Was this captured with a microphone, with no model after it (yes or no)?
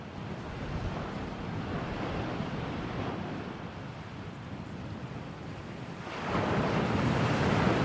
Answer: yes